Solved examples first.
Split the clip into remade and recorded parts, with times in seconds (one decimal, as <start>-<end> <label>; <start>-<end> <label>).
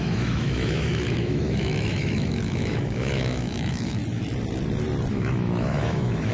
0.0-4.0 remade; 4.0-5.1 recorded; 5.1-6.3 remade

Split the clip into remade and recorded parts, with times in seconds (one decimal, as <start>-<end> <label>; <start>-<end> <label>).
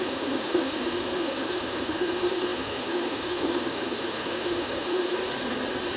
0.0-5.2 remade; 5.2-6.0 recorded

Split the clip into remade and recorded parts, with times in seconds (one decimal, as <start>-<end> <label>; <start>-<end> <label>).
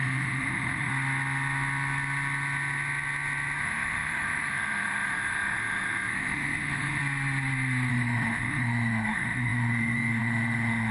0.0-0.9 remade; 0.9-3.6 recorded; 3.6-7.0 remade; 7.0-7.9 recorded; 7.9-10.9 remade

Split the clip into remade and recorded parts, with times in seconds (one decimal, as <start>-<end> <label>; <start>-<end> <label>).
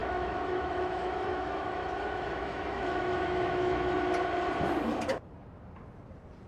0.0-3.9 remade; 3.9-6.5 recorded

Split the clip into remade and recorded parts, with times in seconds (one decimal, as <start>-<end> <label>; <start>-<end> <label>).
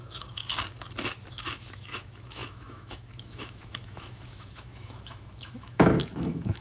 0.0-0.4 remade; 0.4-1.3 recorded; 1.3-6.6 remade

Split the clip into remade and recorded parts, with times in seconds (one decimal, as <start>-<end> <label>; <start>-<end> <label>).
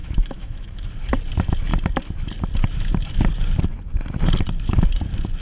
0.0-0.9 remade; 0.9-5.4 recorded